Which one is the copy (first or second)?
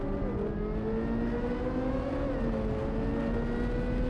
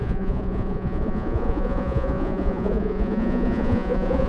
second